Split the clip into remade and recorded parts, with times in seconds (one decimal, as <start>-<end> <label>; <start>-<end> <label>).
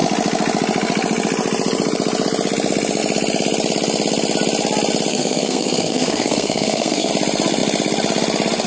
0.0-5.1 recorded; 5.1-7.1 remade; 7.1-8.7 recorded